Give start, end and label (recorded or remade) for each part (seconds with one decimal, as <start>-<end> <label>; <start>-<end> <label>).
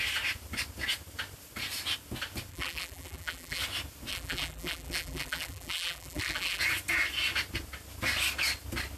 0.0-2.5 recorded; 2.5-3.6 remade; 3.6-4.1 recorded; 4.1-6.6 remade; 6.6-9.0 recorded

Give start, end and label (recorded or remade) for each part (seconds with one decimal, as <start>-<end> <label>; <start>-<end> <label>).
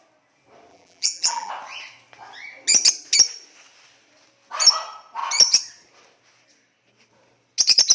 0.0-0.7 recorded; 0.7-1.5 remade; 1.5-7.9 recorded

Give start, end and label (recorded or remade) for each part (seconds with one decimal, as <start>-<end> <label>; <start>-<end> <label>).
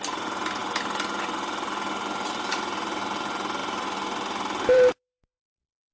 0.0-3.6 recorded; 3.6-5.4 remade; 5.4-5.9 recorded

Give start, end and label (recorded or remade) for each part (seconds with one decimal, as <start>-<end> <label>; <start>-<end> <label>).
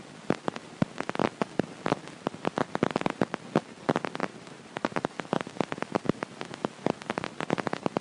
0.0-4.2 recorded; 4.2-4.9 remade; 4.9-8.0 recorded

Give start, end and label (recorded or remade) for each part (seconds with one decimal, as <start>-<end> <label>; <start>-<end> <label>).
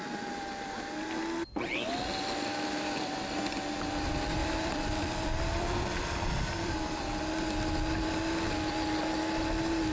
0.0-4.4 recorded; 4.4-7.0 remade; 7.0-9.9 recorded